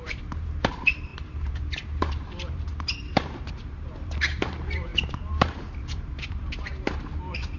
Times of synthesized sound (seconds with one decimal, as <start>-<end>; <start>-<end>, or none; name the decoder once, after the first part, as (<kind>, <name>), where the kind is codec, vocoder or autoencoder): 0.0-7.6 (vocoder, BigVGAN v2)